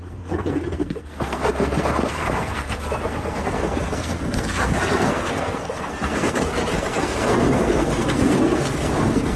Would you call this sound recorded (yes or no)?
no